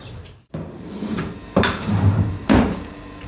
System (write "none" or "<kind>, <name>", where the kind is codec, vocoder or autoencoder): vocoder, BigVGAN v2